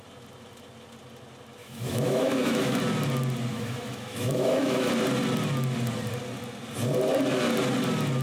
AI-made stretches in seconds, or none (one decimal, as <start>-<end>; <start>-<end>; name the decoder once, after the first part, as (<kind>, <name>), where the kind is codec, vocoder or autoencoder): 1.6-2.8 (autoencoder, DAC-VAE); 3.5-4.9